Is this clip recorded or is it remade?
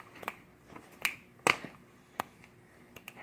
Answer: recorded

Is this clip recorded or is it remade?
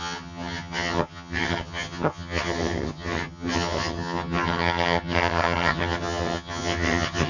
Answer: remade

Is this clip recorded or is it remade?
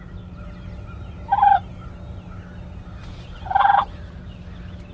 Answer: recorded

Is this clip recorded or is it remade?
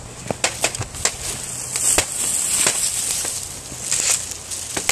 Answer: recorded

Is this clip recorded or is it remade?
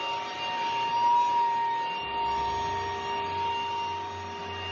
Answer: recorded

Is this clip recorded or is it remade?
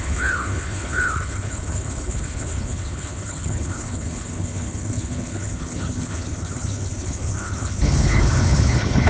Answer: remade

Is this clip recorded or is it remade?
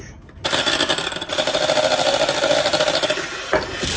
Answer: recorded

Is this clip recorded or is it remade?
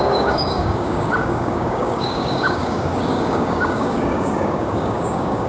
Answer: remade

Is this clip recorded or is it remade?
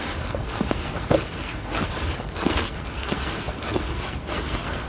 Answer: remade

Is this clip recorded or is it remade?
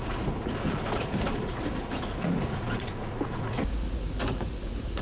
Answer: remade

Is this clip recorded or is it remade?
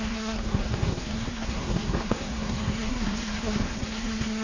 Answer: remade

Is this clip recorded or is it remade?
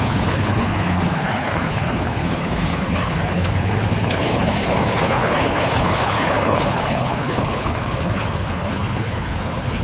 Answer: remade